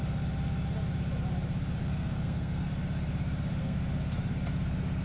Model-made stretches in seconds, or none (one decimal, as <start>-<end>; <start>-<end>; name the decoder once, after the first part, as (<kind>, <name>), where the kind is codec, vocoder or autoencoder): 1.8-2.7 (codec, SNAC); 3.6-4.3

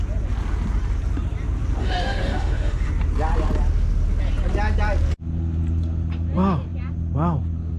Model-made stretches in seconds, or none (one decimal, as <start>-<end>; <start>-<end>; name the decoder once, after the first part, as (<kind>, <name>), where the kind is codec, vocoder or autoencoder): 1.8-2.9 (autoencoder, DAC-VAE)

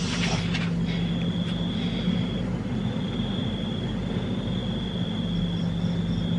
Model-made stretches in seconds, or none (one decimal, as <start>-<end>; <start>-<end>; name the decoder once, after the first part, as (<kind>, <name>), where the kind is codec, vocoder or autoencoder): none

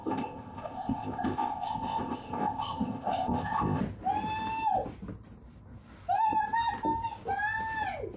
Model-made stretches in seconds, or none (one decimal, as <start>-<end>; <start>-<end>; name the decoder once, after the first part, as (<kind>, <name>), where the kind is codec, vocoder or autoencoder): 0.0-3.8 (codec, ZipCodec)

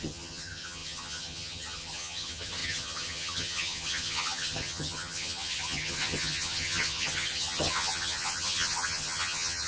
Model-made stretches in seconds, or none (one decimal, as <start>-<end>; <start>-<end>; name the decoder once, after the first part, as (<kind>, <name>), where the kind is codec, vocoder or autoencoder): 0.0-9.7 (vocoder, HiFi-GAN)